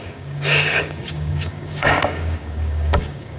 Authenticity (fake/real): fake